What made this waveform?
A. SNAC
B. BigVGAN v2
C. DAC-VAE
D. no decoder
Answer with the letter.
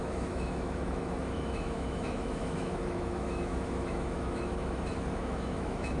C